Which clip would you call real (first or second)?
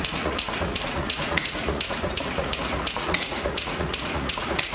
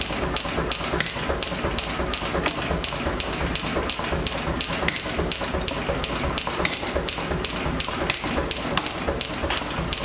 second